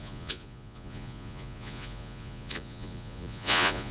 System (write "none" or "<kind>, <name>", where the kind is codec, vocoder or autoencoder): vocoder, Vocos